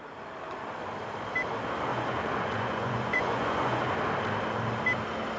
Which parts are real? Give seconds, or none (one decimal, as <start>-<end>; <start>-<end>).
0.0-1.9; 3.8-5.4